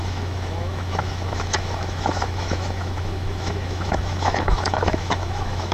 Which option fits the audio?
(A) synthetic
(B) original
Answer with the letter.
A